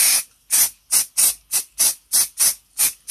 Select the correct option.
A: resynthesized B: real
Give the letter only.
B